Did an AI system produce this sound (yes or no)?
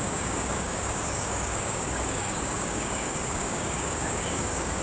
yes